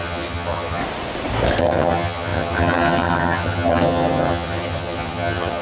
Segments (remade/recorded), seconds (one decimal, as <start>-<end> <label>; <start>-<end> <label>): 0.0-0.8 remade; 0.8-1.6 recorded; 1.6-5.6 remade